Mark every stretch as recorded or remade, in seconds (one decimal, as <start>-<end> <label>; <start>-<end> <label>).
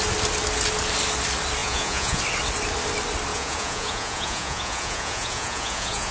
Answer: 0.0-1.6 recorded; 1.6-2.2 remade; 2.2-3.3 recorded; 3.3-6.1 remade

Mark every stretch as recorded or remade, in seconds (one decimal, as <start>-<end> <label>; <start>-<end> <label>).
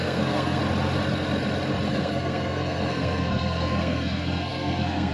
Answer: 0.0-0.6 remade; 0.6-1.9 recorded; 1.9-5.1 remade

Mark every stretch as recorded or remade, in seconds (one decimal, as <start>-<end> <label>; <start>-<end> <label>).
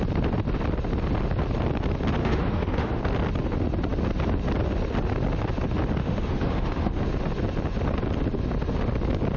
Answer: 0.0-2.2 recorded; 2.2-3.0 remade; 3.0-6.0 recorded; 6.0-7.0 remade; 7.0-9.4 recorded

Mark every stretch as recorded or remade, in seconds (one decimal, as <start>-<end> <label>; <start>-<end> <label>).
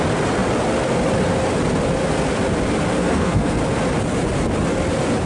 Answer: 0.0-3.0 recorded; 3.0-3.6 remade; 3.6-5.3 recorded